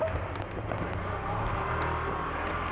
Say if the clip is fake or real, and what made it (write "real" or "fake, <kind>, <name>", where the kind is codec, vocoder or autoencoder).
real